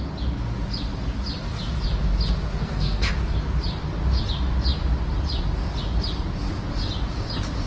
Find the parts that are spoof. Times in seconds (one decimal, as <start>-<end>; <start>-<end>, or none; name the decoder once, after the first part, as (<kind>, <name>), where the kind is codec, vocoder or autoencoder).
2.6-3.1 (codec, SNAC)